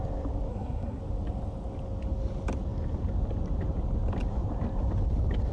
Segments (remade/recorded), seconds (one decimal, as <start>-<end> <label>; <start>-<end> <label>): 0.0-0.5 recorded; 0.5-1.0 remade; 1.0-5.5 recorded

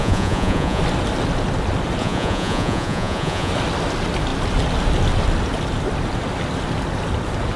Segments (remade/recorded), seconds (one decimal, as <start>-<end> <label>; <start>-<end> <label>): 0.0-0.8 remade; 0.8-2.0 recorded; 2.0-3.5 remade; 3.5-7.6 recorded

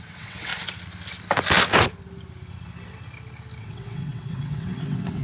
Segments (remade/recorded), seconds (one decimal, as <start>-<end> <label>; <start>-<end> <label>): 0.0-0.5 remade; 0.5-3.6 recorded; 3.6-5.2 remade

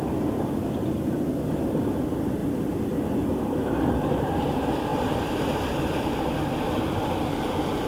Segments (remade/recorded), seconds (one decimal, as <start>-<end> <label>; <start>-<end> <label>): 0.0-7.9 recorded

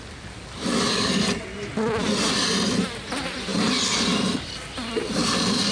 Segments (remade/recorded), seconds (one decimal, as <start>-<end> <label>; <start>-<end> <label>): 0.0-5.7 recorded

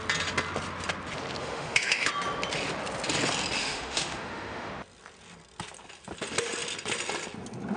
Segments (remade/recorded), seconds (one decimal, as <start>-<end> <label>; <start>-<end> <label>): 0.0-1.4 recorded; 1.4-2.1 remade; 2.1-3.6 recorded; 3.6-4.7 remade; 4.7-7.8 recorded

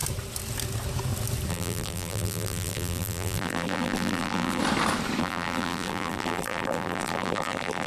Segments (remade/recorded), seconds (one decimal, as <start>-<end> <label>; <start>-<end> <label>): 0.0-1.5 recorded; 1.5-4.6 remade; 4.6-5.2 recorded; 5.2-7.9 remade

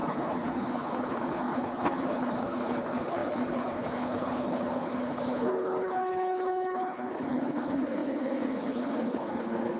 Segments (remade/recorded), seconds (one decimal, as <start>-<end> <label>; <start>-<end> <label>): 0.0-9.8 remade